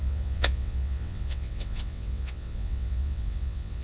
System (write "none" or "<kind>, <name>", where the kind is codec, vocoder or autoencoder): vocoder, WaveNeXt